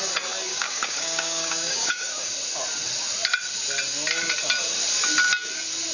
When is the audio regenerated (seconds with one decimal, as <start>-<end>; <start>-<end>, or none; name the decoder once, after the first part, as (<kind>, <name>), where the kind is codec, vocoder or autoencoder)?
0.5-2.3 (codec, DAC)